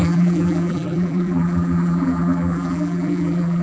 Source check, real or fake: fake